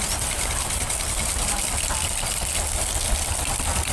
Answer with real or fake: real